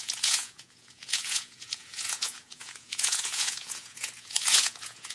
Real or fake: fake